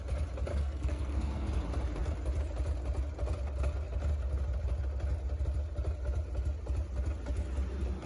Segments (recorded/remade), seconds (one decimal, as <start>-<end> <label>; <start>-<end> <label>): 0.0-0.5 recorded; 0.5-1.6 remade; 1.6-8.1 recorded